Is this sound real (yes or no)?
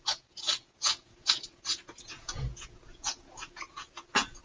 no